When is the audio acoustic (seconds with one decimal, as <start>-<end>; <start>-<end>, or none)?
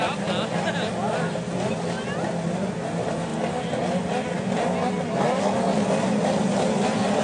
0.0-7.2